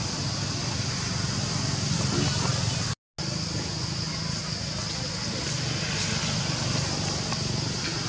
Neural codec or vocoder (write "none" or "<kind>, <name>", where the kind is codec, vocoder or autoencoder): none